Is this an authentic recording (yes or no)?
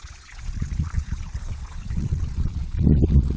no